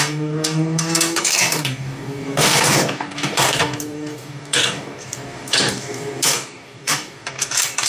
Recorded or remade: remade